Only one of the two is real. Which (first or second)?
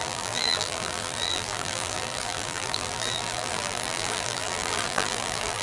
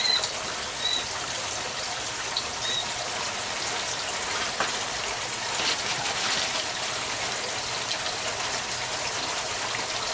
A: second